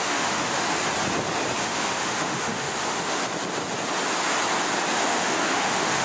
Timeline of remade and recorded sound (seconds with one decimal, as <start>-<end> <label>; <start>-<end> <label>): 0.0-0.8 remade; 0.8-1.6 recorded; 1.6-3.2 remade; 3.2-4.9 recorded; 4.9-6.0 remade